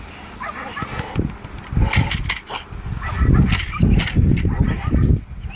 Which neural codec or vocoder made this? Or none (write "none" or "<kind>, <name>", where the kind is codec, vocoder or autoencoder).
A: none